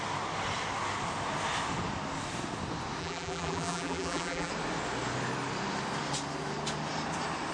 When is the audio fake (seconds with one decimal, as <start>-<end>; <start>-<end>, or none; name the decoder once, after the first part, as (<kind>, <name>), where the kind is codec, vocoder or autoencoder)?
3.0-4.5 (vocoder, BigVGAN v2)